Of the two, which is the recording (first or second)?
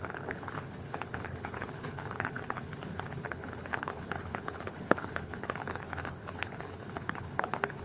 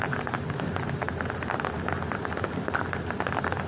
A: second